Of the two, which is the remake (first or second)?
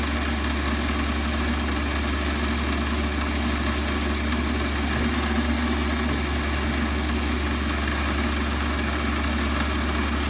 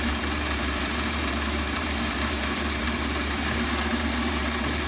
second